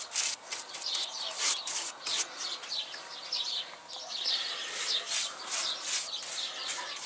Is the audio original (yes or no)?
yes